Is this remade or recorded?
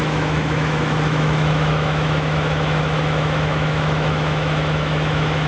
remade